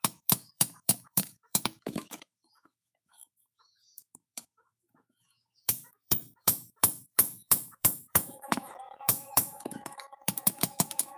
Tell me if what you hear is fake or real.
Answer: fake